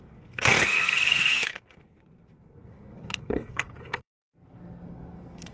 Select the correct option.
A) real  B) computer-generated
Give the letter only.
B